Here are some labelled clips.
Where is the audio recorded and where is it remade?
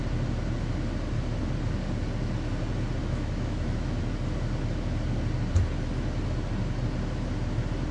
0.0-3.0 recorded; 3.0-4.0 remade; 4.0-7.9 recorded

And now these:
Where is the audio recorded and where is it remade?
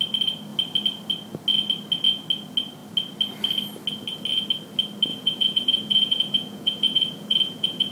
0.0-5.1 recorded; 5.1-7.9 remade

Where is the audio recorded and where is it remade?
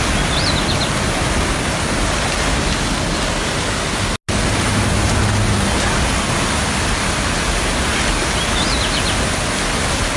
0.0-10.2 recorded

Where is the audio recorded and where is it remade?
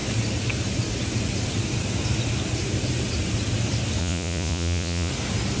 0.0-4.0 recorded; 4.0-5.1 remade; 5.1-5.6 recorded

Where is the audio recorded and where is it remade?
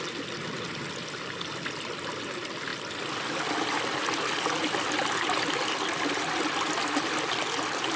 0.0-8.0 recorded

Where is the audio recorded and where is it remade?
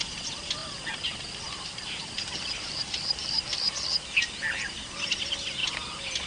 0.0-5.6 remade; 5.6-6.3 recorded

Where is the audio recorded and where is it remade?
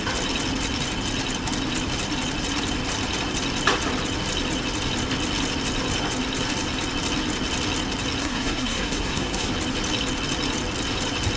0.0-8.2 recorded; 8.2-9.5 remade; 9.5-11.4 recorded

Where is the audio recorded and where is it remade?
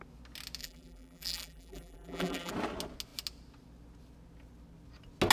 0.0-0.6 recorded; 0.6-2.5 remade; 2.5-5.3 recorded